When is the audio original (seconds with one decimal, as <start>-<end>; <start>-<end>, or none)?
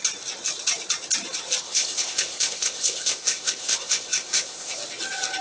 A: 0.0-1.6; 4.8-5.4